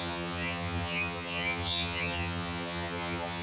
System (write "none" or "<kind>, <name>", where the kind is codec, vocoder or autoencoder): vocoder, HiFi-GAN